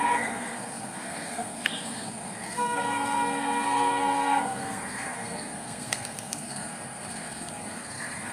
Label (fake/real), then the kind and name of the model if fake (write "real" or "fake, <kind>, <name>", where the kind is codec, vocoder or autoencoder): fake, codec, SNAC